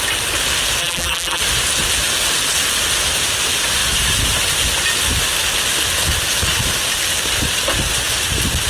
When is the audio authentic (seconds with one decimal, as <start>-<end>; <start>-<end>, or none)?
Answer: 0.0-0.8; 1.4-8.7